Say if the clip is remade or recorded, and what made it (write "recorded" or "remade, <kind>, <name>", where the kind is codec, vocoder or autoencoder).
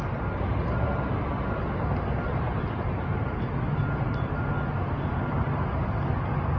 recorded